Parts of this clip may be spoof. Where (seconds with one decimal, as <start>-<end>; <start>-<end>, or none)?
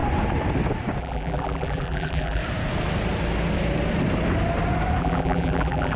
1.0-2.4; 5.0-6.0